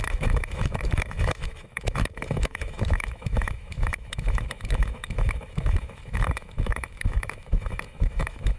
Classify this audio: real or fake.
fake